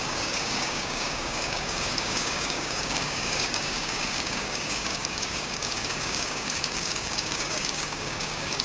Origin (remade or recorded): remade